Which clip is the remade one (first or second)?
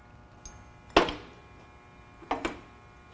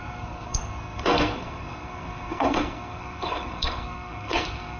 second